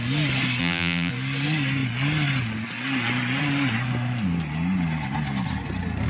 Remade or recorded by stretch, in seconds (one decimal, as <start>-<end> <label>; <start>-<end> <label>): 0.0-0.6 recorded; 0.6-1.1 remade; 1.1-6.1 recorded